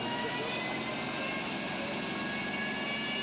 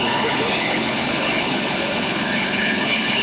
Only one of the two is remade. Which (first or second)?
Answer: second